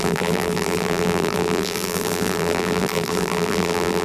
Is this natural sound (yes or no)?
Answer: no